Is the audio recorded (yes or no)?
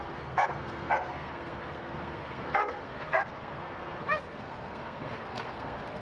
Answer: no